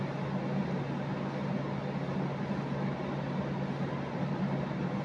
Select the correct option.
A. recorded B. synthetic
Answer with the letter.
A